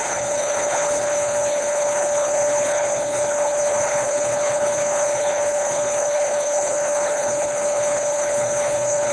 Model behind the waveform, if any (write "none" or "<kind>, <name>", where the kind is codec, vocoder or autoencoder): codec, HILCodec